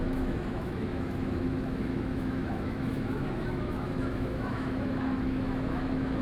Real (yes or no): no